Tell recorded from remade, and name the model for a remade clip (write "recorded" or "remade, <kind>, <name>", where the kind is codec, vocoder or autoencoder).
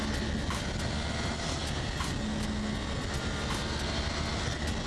recorded